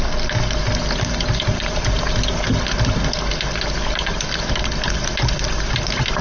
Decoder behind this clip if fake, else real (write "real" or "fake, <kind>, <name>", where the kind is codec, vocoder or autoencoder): real